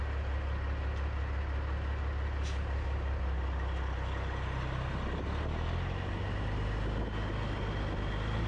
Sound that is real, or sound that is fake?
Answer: real